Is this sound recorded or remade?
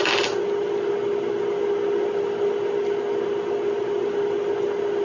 recorded